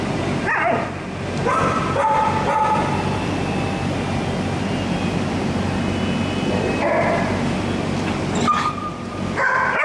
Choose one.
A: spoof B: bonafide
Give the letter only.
B